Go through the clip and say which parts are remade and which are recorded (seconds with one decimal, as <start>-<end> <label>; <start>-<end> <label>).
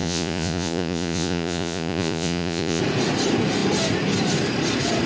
0.0-2.8 remade; 2.8-5.1 recorded